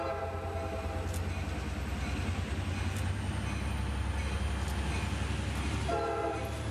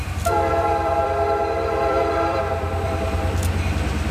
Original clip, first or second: first